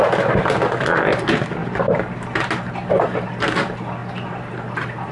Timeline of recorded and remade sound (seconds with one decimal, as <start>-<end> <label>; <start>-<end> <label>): 0.0-5.1 recorded